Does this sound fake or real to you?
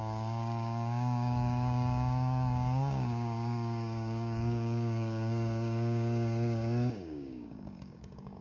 fake